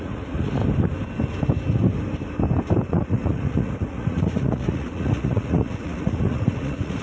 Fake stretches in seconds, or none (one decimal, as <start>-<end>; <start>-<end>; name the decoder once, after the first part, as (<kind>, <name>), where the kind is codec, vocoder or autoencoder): 0.0-0.6 (vocoder, Vocos); 2.9-7.0